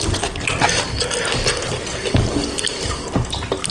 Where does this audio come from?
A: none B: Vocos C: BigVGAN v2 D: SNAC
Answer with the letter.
A